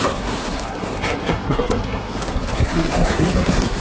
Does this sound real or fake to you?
fake